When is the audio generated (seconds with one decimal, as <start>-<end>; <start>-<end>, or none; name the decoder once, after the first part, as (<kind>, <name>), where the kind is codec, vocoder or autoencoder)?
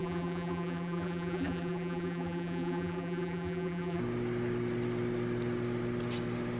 0.0-4.0 (vocoder, BigVGAN v2)